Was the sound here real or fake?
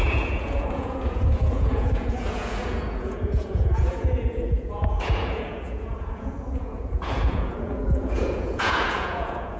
fake